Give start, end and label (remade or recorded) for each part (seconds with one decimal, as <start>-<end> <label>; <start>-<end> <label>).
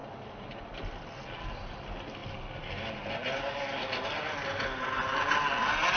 0.0-0.6 remade; 0.6-6.0 recorded